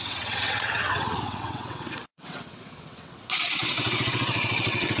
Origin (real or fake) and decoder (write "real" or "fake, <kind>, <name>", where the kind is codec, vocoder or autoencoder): fake, vocoder, WaveNeXt